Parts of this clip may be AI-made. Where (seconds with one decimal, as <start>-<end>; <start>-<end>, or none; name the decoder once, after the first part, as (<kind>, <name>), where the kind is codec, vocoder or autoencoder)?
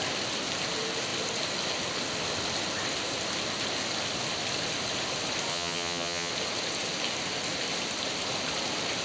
5.5-6.3 (vocoder, HiFi-GAN)